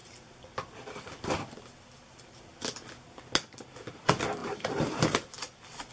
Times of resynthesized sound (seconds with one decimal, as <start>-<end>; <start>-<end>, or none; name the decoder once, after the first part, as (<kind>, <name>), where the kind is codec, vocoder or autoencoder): 0.0-0.7 (vocoder, BigVGAN v2); 4.4-5.3